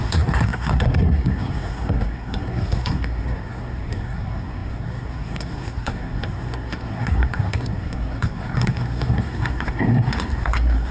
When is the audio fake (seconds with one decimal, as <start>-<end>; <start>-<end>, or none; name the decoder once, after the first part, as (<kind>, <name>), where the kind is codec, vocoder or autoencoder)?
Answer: 0.0-10.9 (codec, SNAC)